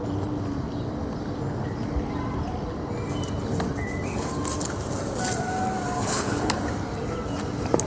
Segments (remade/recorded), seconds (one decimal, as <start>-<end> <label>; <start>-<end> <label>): 0.0-6.0 recorded; 6.0-6.5 remade; 6.5-7.9 recorded